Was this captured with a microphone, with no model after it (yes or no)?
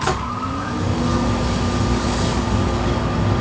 no